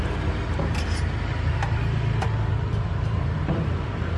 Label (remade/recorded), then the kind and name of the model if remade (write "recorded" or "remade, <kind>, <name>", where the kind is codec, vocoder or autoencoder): recorded